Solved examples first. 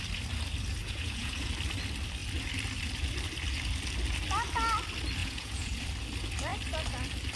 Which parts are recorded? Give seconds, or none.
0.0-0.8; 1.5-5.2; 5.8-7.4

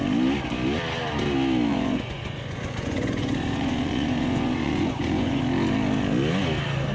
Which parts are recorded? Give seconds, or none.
0.0-1.7; 5.4-6.9